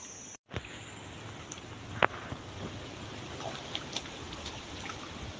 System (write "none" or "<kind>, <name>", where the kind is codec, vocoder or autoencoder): none